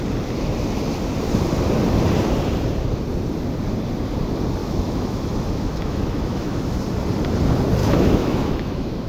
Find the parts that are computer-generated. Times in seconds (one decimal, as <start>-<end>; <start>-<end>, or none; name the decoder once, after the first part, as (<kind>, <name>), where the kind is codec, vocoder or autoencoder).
4.6-6.8 (autoencoder, DAC-VAE); 7.8-9.1